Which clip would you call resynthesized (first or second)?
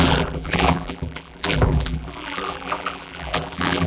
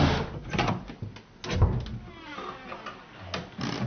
first